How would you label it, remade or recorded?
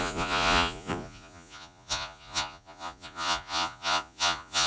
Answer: remade